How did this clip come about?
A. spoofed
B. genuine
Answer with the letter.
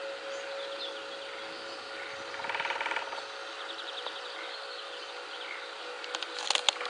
B